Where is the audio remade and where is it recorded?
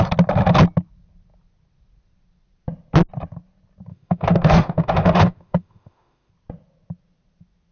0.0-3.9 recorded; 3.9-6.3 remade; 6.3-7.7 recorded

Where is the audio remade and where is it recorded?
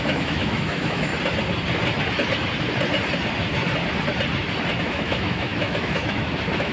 0.0-1.1 remade; 1.1-4.8 recorded; 4.8-6.7 remade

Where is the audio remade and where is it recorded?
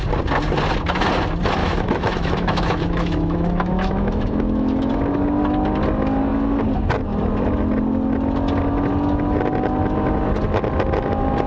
0.0-1.6 recorded; 1.6-4.9 remade; 4.9-11.5 recorded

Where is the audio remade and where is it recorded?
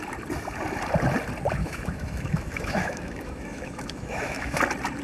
0.0-1.6 recorded; 1.6-4.6 remade; 4.6-5.0 recorded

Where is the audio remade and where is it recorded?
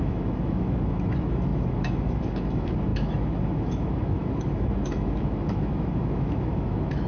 0.0-7.1 remade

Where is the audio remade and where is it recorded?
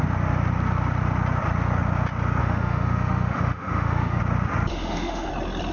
0.0-2.4 recorded; 2.4-4.2 remade; 4.2-4.7 recorded; 4.7-5.3 remade; 5.3-5.7 recorded